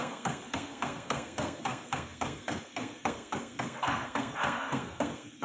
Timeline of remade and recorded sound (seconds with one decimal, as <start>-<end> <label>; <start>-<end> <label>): 0.0-5.4 remade